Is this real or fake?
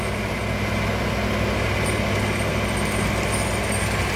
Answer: real